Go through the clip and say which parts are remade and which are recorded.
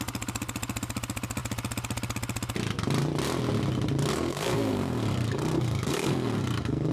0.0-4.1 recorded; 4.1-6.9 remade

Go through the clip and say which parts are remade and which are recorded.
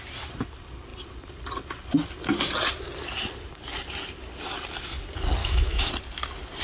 0.0-5.4 recorded; 5.4-5.9 remade; 5.9-6.6 recorded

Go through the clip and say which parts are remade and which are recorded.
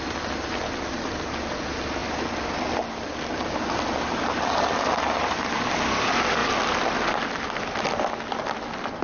0.0-9.0 recorded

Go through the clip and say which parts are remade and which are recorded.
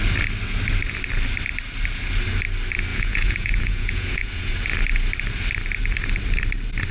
0.0-2.9 recorded; 2.9-4.5 remade; 4.5-6.9 recorded